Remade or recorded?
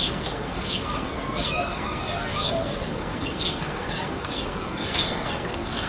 remade